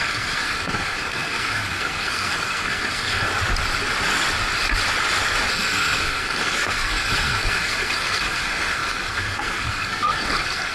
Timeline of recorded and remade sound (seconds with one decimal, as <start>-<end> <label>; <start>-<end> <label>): 0.0-3.3 remade; 3.3-5.5 recorded; 5.5-10.7 remade